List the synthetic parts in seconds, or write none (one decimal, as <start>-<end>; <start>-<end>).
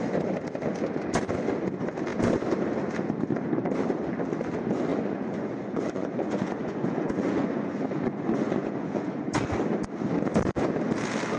4.9-9.4